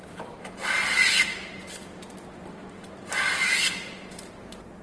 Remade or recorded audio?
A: recorded